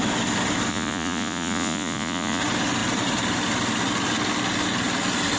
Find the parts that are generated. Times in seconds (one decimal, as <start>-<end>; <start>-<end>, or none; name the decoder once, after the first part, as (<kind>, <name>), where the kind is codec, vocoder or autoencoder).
0.7-2.4 (vocoder, Vocos)